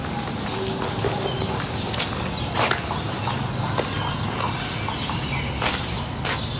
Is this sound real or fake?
real